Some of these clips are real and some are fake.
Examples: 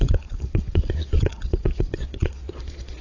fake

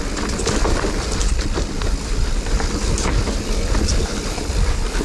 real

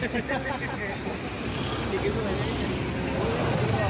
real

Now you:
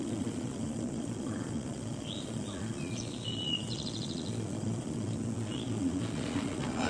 fake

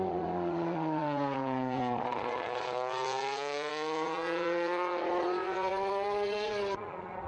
fake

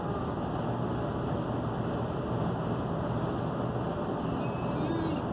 real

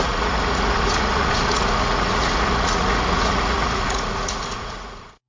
fake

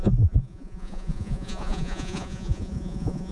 fake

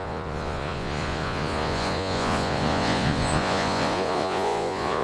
fake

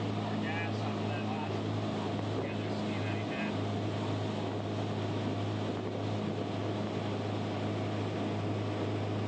real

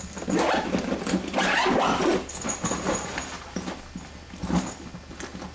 real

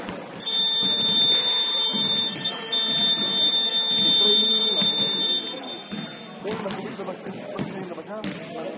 real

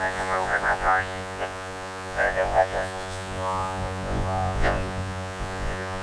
fake